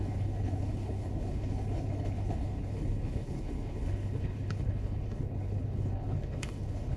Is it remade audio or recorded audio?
remade